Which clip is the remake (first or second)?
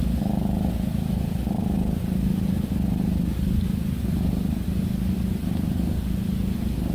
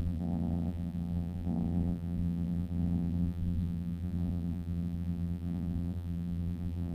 second